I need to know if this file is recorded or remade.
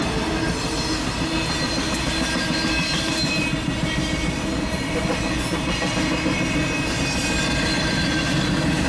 recorded